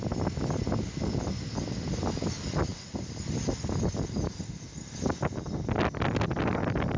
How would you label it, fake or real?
real